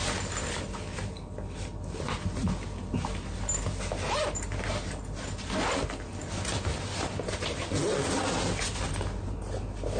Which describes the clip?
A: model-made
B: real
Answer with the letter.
B